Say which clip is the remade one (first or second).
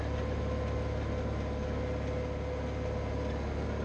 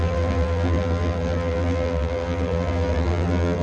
second